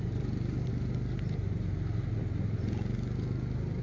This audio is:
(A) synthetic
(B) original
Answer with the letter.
B